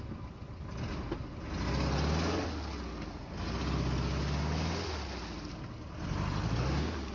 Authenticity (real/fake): real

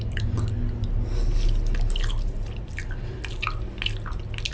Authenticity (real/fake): real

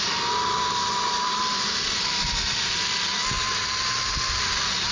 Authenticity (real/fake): real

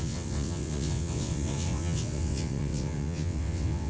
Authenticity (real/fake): fake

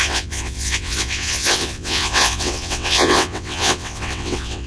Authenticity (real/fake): fake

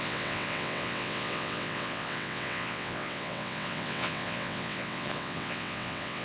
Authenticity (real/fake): fake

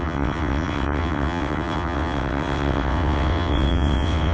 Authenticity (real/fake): fake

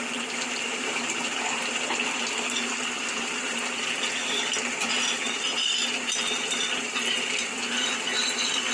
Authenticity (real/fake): real